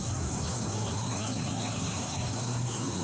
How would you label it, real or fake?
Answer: fake